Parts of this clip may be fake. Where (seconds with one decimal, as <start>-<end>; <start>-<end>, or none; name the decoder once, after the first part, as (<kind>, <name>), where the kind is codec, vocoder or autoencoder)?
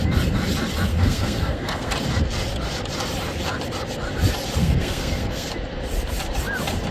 0.9-1.9 (codec, SNAC); 4.6-5.5